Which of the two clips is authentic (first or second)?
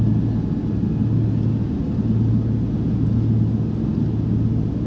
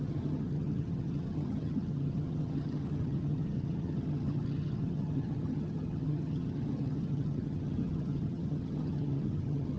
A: first